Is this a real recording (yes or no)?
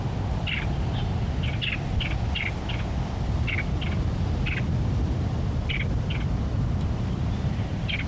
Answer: yes